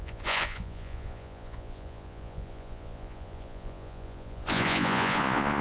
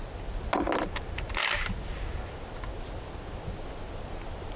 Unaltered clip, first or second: second